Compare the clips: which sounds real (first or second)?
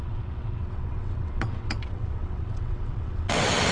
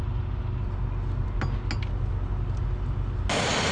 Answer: second